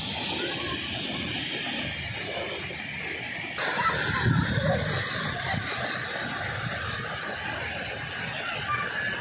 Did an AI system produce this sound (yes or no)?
no